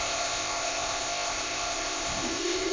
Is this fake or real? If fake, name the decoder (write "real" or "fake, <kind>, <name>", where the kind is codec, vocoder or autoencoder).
fake, codec, ZipCodec